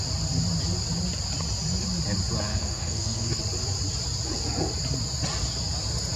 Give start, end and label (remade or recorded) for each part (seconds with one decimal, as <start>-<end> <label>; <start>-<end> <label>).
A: 0.0-2.5 recorded; 2.5-3.4 remade; 3.4-6.2 recorded